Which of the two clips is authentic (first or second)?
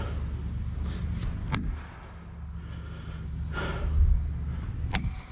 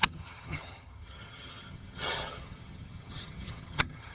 first